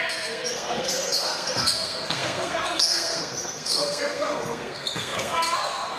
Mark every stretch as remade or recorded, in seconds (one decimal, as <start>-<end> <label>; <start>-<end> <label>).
0.0-6.0 remade

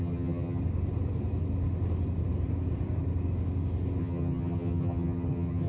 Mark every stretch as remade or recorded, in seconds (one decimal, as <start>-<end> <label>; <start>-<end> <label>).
0.0-0.6 remade; 0.6-4.0 recorded; 4.0-5.7 remade

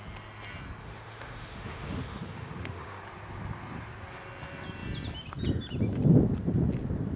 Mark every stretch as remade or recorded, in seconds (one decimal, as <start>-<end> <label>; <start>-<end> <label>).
0.0-0.8 recorded; 0.8-3.0 remade; 3.0-7.2 recorded

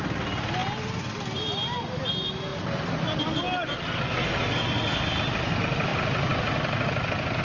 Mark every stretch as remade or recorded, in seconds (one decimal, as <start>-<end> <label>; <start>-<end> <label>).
0.0-7.4 recorded

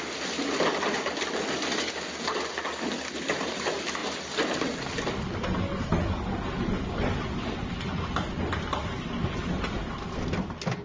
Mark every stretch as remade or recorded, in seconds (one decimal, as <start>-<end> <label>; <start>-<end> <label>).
0.0-10.8 recorded

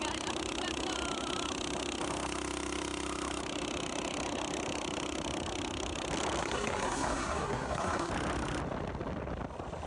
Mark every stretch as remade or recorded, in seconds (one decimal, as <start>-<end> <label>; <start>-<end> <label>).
0.0-6.4 recorded; 6.4-8.1 remade; 8.1-9.9 recorded